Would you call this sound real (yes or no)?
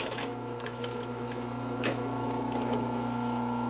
no